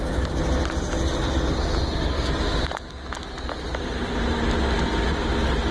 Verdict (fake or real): real